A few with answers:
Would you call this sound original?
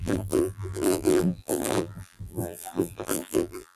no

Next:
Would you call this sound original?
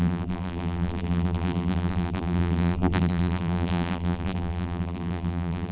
no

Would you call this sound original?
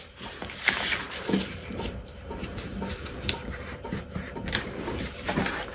no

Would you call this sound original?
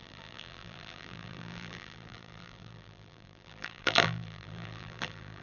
no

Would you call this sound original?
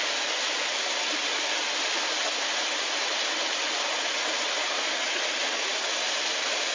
yes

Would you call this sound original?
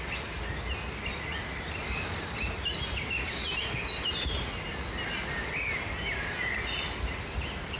yes